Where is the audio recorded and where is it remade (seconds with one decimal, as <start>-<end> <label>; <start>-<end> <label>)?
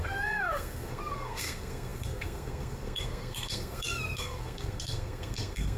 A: 0.0-5.8 remade